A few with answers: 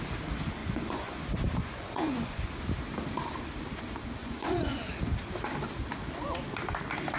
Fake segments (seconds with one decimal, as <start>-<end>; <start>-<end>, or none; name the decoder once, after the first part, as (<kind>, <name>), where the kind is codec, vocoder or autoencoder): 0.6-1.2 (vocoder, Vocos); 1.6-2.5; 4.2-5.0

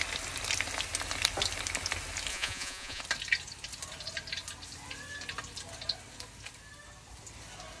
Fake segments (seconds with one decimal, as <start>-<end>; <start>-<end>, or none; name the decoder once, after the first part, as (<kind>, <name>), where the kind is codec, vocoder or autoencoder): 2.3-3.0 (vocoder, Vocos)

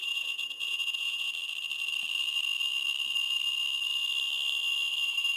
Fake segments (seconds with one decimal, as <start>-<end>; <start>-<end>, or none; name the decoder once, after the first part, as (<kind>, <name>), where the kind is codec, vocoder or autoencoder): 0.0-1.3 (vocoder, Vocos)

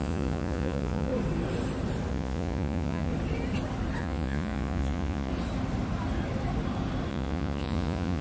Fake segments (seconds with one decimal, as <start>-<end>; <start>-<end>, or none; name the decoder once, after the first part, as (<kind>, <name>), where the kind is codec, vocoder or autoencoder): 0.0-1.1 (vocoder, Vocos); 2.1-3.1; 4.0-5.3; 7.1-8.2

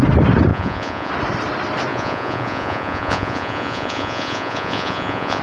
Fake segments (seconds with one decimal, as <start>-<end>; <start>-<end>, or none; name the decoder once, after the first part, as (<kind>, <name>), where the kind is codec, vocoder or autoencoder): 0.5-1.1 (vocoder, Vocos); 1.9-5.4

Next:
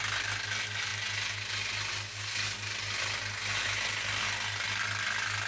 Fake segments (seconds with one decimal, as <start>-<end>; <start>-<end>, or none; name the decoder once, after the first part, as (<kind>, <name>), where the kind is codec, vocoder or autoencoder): none